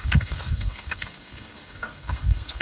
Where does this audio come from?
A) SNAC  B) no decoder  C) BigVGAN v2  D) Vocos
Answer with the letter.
A